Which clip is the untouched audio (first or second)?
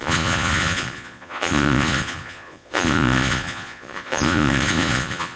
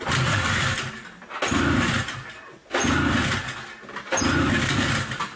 second